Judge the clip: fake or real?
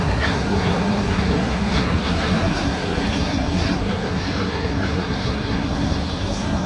fake